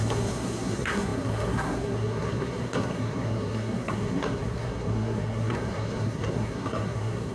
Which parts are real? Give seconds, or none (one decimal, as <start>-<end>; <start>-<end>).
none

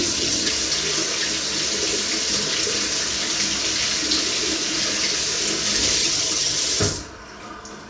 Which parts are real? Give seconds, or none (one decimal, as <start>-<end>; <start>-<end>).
0.5-6.0; 6.6-7.9

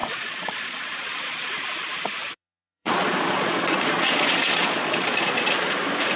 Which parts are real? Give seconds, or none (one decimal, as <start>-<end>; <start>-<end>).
1.6-2.2; 5.8-6.2

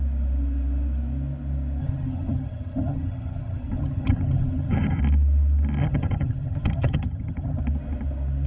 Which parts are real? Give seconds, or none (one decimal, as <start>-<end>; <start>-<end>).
0.0-1.8; 5.0-5.8; 7.6-8.5

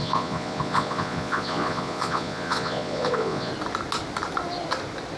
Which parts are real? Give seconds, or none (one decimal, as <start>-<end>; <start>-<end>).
3.5-5.2

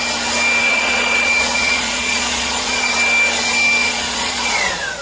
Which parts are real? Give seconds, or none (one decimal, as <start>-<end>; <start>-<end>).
0.0-0.6; 2.9-3.8

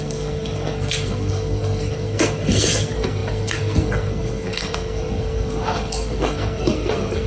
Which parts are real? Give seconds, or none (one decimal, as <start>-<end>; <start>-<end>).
none

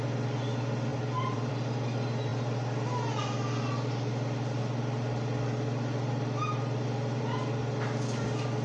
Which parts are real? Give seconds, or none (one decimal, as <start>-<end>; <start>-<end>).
0.0-0.9; 1.5-8.6